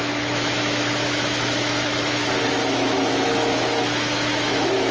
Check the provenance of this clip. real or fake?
fake